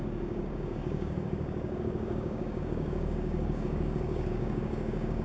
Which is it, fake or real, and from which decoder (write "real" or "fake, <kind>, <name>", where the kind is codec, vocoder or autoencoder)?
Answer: fake, codec, DAC